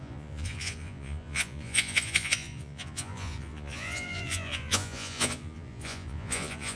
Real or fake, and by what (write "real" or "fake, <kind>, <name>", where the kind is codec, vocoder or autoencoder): fake, vocoder, Vocos